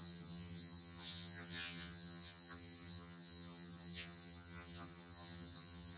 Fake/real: fake